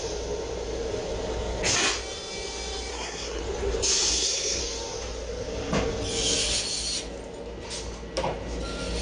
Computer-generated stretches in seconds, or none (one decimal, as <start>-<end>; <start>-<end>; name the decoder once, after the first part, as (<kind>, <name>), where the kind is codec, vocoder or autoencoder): 2.9-3.4 (codec, SNAC); 4.1-4.6